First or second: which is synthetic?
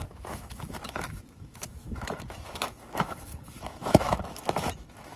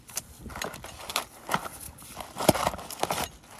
first